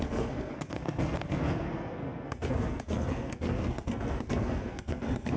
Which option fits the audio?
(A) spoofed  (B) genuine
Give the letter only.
A